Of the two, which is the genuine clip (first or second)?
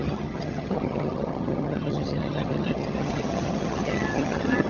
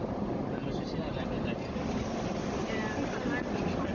second